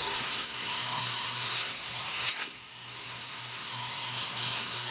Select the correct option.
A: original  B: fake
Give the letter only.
B